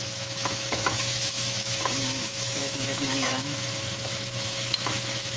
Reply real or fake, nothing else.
fake